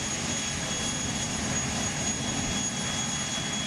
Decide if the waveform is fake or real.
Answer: real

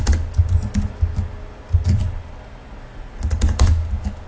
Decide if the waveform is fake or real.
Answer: real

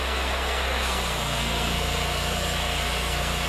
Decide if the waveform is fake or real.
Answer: fake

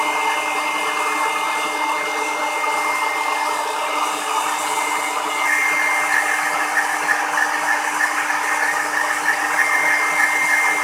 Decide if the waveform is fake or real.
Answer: real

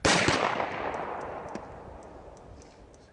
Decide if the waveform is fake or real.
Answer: real